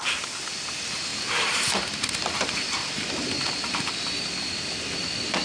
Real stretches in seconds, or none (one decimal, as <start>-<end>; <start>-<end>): 0.0-1.1; 4.3-5.4